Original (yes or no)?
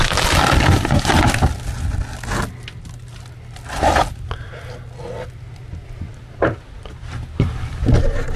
yes